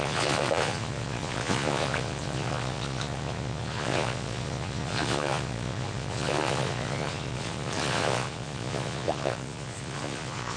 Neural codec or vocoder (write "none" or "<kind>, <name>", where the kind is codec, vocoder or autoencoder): vocoder, Vocos